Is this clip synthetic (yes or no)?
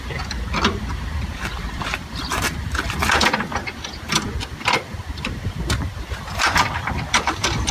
yes